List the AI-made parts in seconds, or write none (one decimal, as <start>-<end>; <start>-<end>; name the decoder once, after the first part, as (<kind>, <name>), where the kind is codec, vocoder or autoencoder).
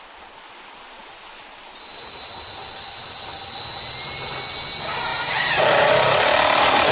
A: 5.1-5.9 (vocoder, BigVGAN v2)